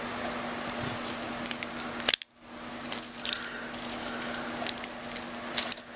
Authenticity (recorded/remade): recorded